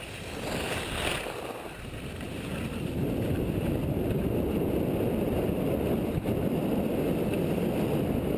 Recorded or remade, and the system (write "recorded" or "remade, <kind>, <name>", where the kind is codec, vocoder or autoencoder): remade, vocoder, BigVGAN v2